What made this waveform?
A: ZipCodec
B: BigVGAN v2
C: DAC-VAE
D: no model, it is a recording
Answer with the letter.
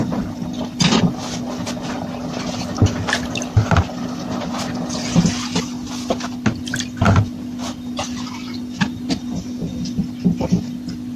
D